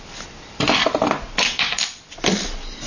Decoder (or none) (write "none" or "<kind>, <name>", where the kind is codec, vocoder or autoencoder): none